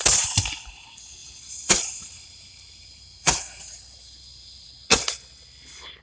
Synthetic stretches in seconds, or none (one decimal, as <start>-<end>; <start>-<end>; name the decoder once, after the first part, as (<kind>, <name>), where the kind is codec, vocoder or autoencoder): 1.2-4.7 (vocoder, BigVGAN v2)